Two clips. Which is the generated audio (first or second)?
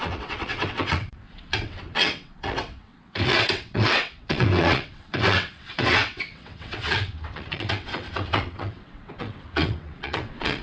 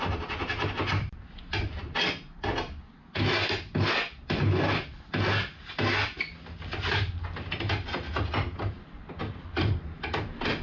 first